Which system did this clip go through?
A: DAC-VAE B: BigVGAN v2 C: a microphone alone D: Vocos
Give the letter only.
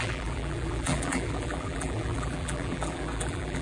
B